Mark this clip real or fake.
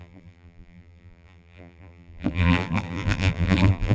fake